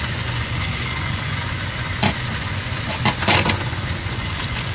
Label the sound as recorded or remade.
remade